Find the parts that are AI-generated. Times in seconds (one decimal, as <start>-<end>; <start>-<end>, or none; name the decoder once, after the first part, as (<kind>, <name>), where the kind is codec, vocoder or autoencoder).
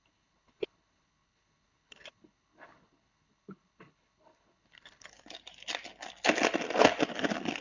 0.0-5.1 (codec, HILCodec)